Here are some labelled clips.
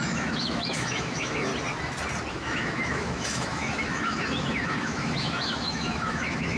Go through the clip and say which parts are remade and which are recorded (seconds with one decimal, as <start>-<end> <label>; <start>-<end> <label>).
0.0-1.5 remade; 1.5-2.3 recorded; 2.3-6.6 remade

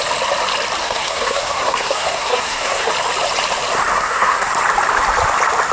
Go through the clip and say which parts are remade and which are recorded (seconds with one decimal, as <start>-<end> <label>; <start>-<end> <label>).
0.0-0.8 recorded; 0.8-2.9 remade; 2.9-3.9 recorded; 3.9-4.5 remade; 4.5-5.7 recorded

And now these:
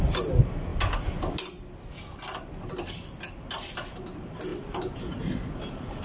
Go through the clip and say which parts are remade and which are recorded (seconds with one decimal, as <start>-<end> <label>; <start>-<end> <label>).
0.0-6.0 recorded

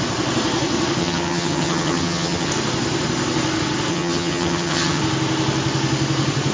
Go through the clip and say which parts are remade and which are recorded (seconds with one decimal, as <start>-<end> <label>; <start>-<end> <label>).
0.0-1.0 recorded; 1.0-2.5 remade; 2.5-3.9 recorded; 3.9-5.0 remade; 5.0-6.5 recorded